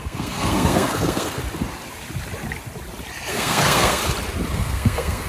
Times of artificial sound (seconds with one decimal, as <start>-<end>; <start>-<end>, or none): 0.0-1.4; 3.3-4.0; 4.5-5.3

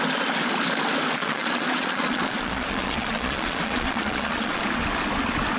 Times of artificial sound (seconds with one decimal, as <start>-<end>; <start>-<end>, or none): 1.2-4.6

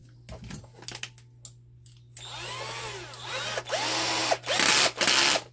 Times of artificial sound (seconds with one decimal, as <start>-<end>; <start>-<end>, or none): none